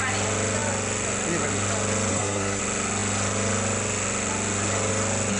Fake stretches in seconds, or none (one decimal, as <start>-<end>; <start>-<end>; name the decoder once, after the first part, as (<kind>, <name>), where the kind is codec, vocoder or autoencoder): 2.1-2.6 (codec, SNAC)